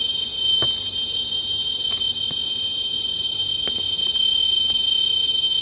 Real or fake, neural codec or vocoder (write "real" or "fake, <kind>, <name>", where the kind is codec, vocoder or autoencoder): real